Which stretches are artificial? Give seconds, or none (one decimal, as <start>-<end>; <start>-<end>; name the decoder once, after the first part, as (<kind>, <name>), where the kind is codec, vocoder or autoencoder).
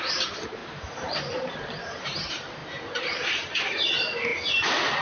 0.0-5.0 (vocoder, BigVGAN v2)